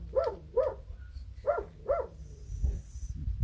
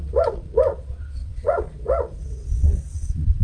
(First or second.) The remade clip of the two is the second